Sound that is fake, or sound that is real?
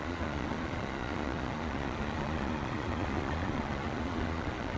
fake